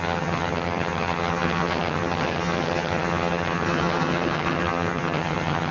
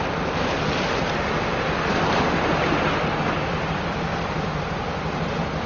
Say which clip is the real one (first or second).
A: second